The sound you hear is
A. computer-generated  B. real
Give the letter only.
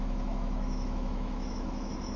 A